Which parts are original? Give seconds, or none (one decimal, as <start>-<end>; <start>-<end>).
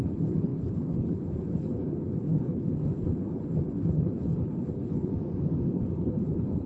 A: 5.1-5.7